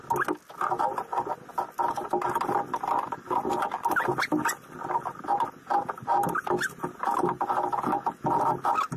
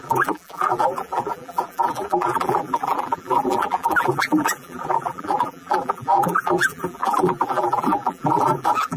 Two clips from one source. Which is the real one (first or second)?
first